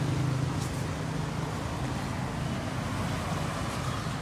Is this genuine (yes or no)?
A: yes